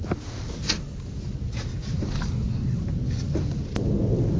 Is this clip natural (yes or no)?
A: yes